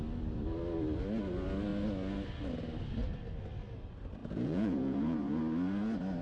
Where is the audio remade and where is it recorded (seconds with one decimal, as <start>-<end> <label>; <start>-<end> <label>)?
0.0-4.2 recorded; 4.2-5.4 remade; 5.4-6.2 recorded